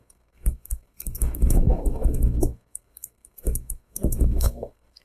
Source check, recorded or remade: remade